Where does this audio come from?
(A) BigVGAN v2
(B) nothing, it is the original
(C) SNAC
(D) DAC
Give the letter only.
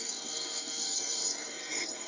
C